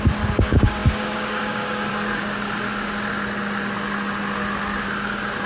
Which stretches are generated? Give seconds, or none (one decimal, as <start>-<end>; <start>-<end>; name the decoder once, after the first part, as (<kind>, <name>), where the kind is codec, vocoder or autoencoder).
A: 0.0-1.9 (codec, DAC)